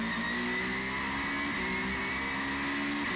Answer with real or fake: real